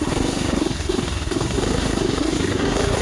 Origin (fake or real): fake